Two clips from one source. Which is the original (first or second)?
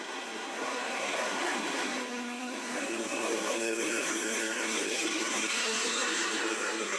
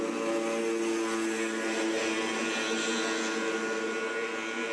second